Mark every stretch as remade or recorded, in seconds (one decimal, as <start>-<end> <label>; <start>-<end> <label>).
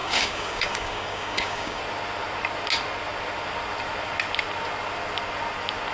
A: 0.0-1.8 remade; 1.8-5.9 recorded